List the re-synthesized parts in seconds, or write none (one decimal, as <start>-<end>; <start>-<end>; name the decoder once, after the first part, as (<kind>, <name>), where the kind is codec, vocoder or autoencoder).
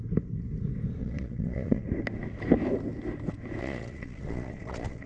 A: 1.0-1.8 (vocoder, Vocos); 3.6-5.1